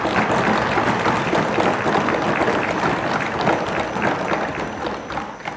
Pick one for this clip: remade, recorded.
recorded